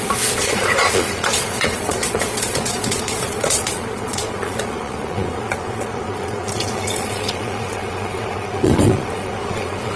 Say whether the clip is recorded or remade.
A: remade